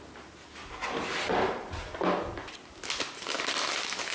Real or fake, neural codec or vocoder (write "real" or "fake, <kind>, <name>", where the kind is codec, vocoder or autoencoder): real